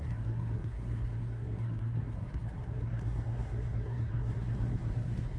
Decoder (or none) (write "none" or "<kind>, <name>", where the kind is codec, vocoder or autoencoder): codec, SNAC